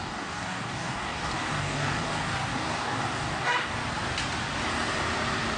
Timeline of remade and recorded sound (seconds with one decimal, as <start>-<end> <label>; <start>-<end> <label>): 0.0-3.8 remade; 3.8-5.6 recorded